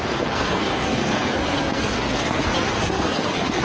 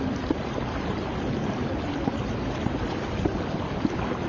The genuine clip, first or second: second